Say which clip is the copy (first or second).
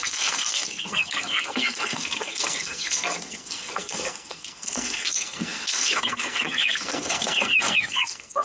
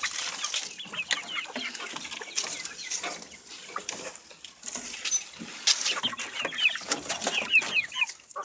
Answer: first